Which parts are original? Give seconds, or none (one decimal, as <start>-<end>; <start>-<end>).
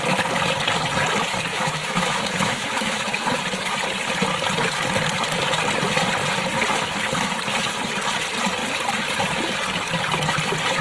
0.0-1.5; 3.4-10.8